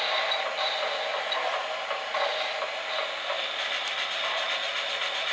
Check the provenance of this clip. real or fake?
real